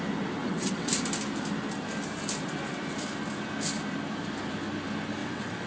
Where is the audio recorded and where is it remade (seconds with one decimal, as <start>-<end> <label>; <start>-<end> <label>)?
0.0-0.4 recorded; 0.4-0.9 remade; 0.9-5.2 recorded; 5.2-5.7 remade